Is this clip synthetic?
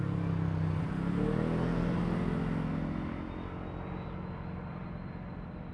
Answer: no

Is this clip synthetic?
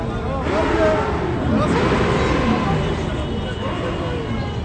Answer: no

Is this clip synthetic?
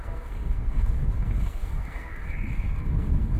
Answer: yes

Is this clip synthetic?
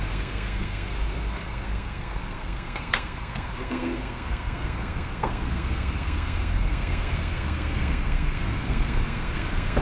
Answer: yes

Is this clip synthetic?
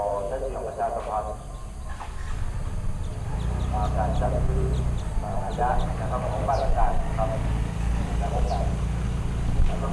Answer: no